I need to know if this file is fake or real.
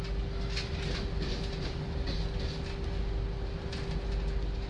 real